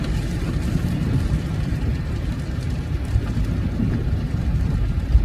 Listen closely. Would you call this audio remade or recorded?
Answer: remade